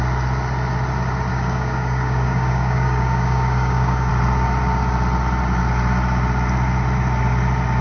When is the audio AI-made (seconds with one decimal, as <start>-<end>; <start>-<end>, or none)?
1.3-4.1